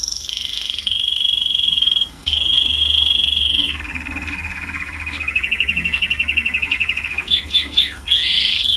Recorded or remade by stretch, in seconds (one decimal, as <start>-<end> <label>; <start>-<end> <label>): 0.0-8.8 remade